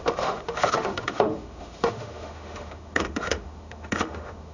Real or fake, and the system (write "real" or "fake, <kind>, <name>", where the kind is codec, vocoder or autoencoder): fake, autoencoder, DAC-VAE